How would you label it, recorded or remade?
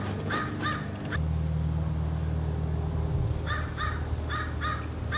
recorded